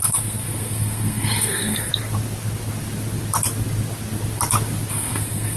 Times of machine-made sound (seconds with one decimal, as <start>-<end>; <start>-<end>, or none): 0.0-1.9; 4.9-5.6